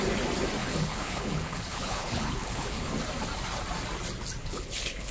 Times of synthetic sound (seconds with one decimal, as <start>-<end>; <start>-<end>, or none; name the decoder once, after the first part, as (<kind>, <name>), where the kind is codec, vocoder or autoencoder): 0.6-2.9 (codec, HILCodec); 4.4-5.1

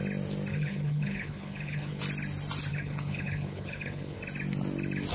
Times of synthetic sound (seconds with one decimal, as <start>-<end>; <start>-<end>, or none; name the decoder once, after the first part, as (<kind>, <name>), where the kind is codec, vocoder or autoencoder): 0.5-2.0 (codec, HILCodec); 2.7-4.2

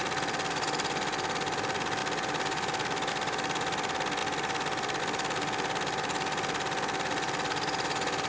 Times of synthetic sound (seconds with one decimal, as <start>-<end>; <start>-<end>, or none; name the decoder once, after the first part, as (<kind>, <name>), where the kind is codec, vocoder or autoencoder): none

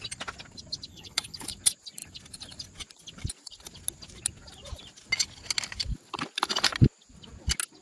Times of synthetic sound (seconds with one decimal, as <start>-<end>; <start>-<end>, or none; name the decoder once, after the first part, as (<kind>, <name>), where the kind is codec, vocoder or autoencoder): 0.9-1.5 (codec, HILCodec)